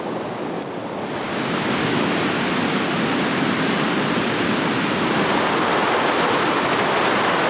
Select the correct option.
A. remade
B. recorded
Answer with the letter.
B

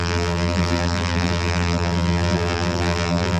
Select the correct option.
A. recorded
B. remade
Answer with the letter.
B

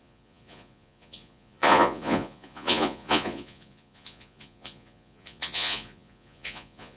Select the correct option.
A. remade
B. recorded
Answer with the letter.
A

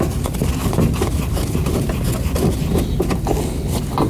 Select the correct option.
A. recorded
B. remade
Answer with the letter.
A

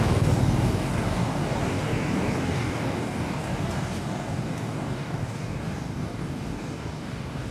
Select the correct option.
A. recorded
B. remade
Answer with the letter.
B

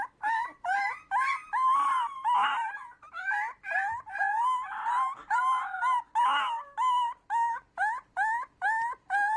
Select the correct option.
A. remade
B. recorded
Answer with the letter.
B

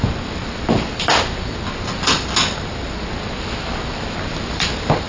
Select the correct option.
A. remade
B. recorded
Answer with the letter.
B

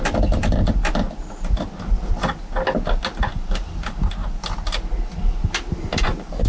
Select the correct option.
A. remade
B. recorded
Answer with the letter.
B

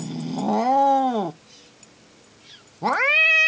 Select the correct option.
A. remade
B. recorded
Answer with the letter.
B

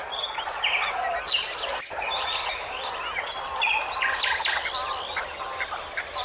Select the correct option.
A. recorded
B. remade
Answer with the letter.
A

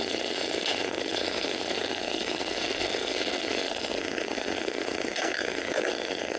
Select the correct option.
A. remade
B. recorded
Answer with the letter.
A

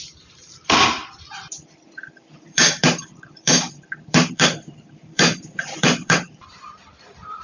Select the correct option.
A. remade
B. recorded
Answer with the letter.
A